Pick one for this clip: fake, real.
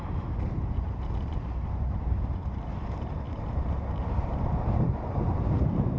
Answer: fake